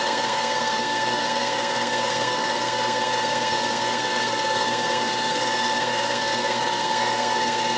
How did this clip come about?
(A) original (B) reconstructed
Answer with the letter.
B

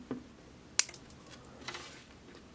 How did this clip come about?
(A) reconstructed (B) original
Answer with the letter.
B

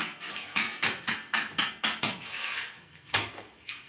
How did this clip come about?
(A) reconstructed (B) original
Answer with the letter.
A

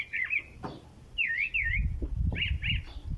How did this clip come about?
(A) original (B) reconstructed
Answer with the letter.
A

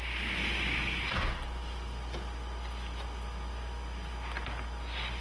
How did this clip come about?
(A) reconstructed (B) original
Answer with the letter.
B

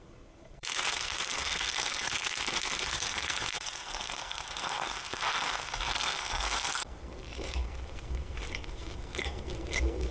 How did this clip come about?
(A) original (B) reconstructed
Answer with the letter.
B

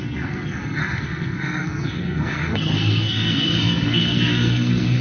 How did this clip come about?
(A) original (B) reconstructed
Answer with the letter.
B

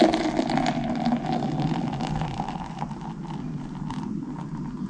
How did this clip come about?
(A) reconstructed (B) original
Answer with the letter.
B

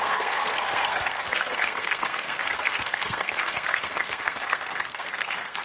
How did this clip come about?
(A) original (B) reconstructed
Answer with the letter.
B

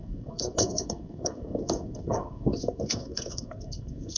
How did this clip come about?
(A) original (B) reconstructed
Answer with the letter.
B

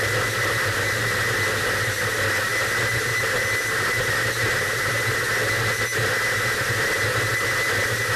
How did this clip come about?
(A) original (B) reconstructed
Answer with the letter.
A